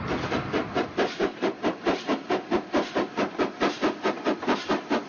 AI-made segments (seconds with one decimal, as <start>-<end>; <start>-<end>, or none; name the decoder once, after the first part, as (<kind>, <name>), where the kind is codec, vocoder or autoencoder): 0.6-3.7 (vocoder, BigVGAN v2)

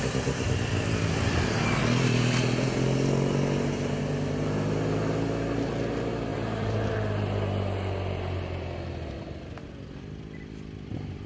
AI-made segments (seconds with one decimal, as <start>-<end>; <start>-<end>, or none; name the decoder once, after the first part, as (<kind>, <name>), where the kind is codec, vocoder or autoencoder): none

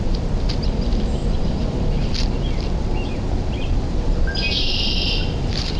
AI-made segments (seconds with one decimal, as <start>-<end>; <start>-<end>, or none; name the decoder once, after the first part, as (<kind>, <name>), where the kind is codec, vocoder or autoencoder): 1.2-4.7 (vocoder, BigVGAN v2)

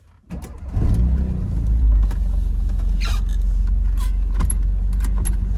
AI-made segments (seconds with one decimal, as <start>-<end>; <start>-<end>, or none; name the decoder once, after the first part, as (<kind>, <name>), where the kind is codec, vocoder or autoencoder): 1.4-1.9 (vocoder, BigVGAN v2)

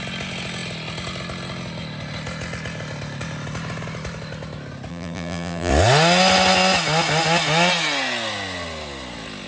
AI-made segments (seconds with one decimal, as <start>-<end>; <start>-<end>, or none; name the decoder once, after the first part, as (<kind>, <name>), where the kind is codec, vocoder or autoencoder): 4.9-5.7 (vocoder, BigVGAN v2)

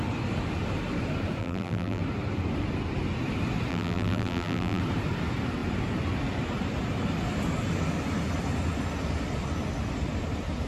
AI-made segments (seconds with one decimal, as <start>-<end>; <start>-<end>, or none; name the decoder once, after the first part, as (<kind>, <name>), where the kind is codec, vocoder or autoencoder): 1.4-2.0 (vocoder, BigVGAN v2); 3.7-4.8

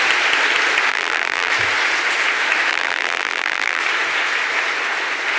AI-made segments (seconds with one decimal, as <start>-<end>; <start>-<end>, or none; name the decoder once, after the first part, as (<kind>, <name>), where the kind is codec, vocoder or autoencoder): 0.9-1.5 (vocoder, BigVGAN v2); 2.7-3.8

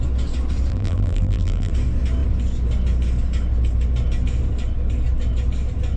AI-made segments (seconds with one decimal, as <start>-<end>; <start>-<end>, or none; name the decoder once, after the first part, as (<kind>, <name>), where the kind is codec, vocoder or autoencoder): 0.7-1.7 (vocoder, BigVGAN v2)